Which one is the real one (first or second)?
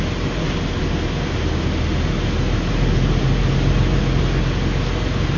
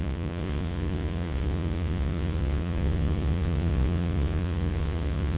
first